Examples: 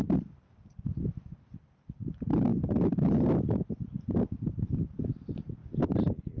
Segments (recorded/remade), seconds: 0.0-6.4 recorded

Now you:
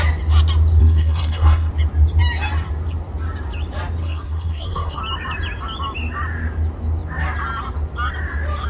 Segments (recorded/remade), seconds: 0.0-0.8 recorded; 0.8-1.7 remade; 1.7-4.0 recorded; 4.0-5.0 remade; 5.0-8.7 recorded

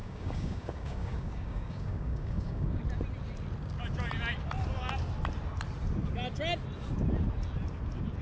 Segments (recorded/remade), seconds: 0.0-2.8 remade; 2.8-8.2 recorded

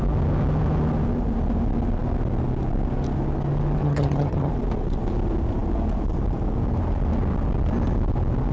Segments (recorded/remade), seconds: 0.0-3.8 recorded; 3.8-4.5 remade; 4.5-8.5 recorded

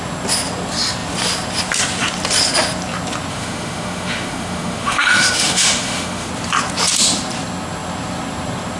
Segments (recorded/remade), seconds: 0.0-3.3 recorded; 3.3-6.3 remade; 6.3-8.8 recorded

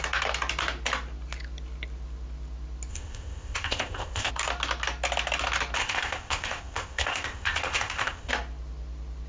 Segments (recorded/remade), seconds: 0.0-2.9 recorded; 2.9-4.3 remade; 4.3-5.8 recorded; 5.8-8.3 remade; 8.3-9.3 recorded